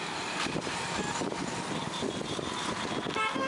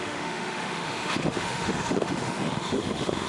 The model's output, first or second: second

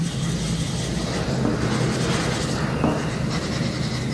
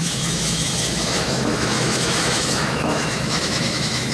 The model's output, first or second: second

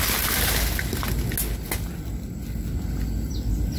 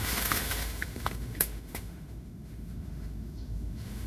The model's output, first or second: second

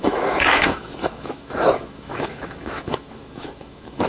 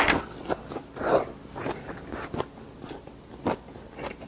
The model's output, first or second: first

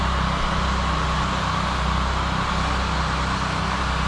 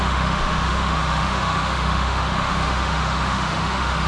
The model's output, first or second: second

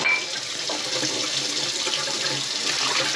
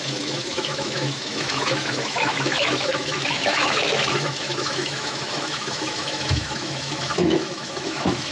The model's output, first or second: second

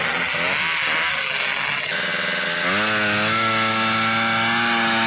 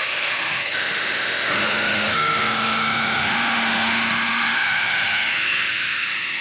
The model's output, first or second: second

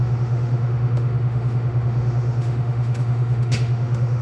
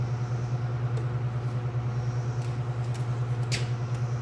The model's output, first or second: first